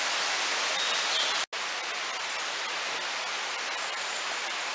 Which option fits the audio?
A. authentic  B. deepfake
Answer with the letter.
A